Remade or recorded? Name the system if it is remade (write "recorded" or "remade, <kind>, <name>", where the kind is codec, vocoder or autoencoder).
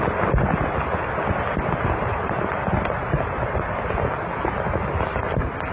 recorded